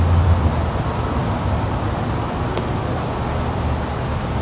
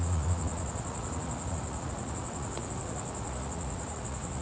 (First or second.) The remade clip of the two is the second